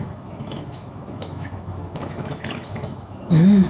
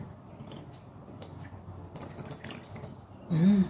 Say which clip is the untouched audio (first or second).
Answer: second